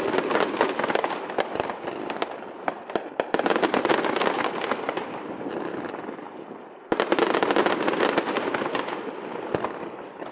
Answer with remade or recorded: recorded